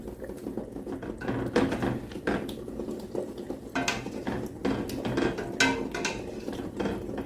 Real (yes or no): yes